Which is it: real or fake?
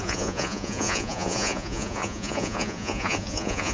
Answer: fake